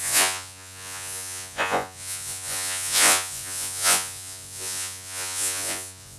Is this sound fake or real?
fake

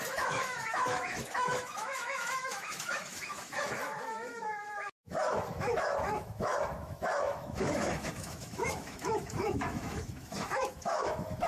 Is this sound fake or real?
fake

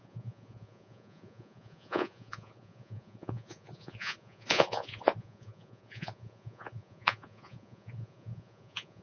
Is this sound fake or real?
fake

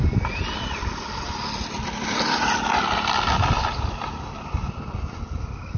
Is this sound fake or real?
fake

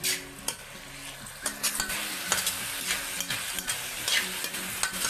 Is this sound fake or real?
real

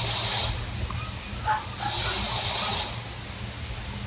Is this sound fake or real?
real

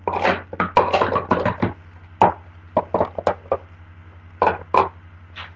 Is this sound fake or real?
real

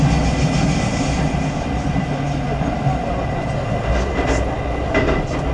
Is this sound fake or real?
real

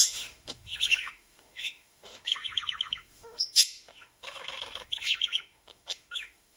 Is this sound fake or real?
fake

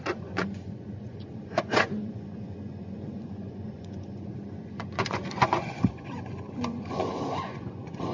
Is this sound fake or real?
fake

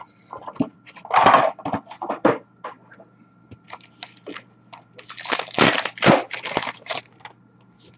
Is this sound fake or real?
real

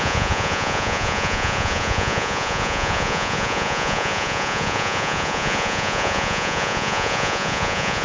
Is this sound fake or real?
fake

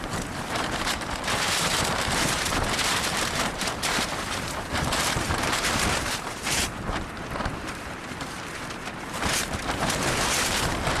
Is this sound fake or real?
fake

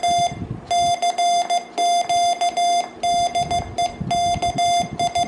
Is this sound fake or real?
real